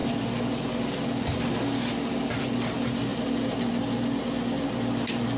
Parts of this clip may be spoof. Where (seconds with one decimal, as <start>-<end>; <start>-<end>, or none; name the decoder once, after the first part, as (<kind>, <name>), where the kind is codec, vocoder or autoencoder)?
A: none